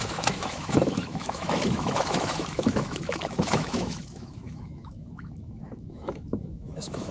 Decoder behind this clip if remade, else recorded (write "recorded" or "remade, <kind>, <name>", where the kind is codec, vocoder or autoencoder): remade, autoencoder, DAC-VAE